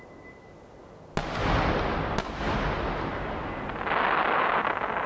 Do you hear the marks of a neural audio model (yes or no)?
no